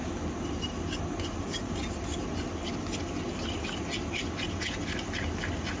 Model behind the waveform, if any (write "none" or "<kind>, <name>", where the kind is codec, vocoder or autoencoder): none